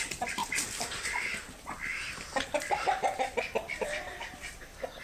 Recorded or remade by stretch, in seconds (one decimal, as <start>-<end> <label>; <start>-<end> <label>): 0.0-5.0 remade